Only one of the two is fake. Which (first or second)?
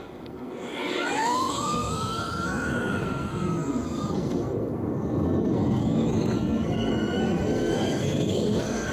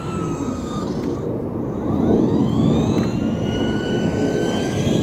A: first